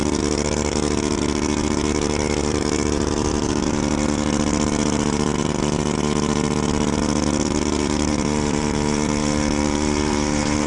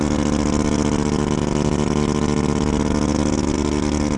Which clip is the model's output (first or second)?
first